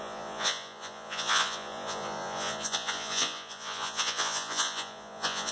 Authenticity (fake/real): fake